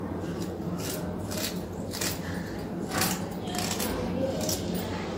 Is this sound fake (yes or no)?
no